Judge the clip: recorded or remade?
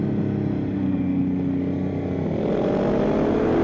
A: recorded